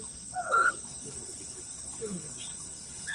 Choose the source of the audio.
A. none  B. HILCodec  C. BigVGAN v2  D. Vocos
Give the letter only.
B